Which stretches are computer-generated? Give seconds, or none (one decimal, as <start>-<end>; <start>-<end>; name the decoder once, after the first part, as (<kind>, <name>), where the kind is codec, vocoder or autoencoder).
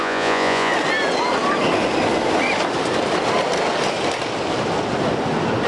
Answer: 0.0-0.7 (vocoder, Vocos)